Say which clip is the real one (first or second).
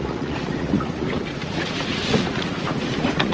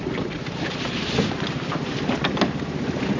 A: second